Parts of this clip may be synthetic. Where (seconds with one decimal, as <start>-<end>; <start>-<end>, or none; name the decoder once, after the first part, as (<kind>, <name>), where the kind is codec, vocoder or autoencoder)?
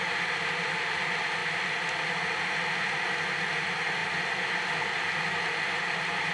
none